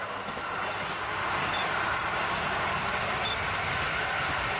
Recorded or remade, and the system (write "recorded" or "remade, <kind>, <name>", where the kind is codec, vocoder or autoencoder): recorded